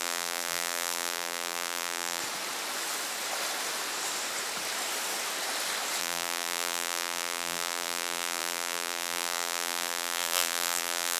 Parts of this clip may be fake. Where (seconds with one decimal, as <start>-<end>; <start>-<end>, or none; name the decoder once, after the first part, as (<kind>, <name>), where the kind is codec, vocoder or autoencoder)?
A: 0.0-2.2 (vocoder, BigVGAN v2); 6.0-11.2